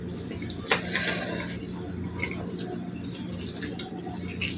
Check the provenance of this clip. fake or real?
real